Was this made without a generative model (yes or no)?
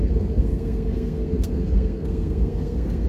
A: no